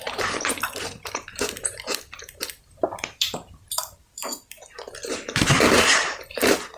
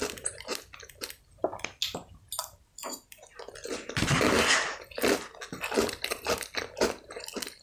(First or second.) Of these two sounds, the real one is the second